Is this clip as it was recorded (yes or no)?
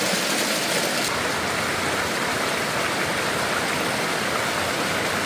yes